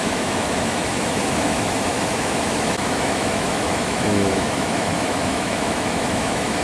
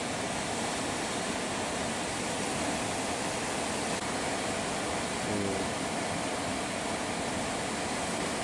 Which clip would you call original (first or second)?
second